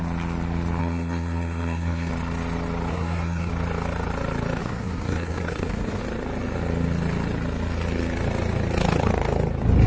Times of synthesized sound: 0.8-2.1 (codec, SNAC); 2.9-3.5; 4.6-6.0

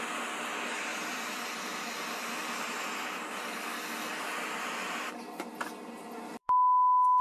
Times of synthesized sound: 6.4-7.2 (autoencoder, DAC-VAE)

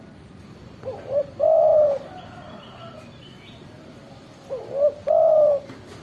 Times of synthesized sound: 0.0-6.0 (vocoder, BigVGAN v2)